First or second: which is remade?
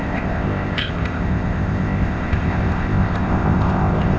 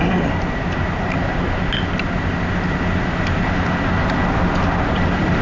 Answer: first